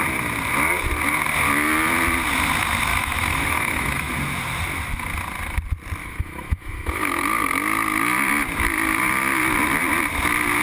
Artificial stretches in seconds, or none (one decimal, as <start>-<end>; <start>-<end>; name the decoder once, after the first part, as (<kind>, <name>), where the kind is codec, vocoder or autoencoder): 2.9-4.1 (autoencoder, DAC-VAE); 6.0-7.2